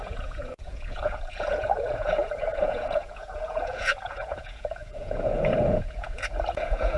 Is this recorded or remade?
remade